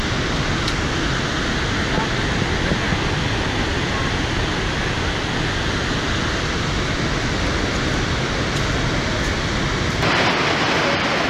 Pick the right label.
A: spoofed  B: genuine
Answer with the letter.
B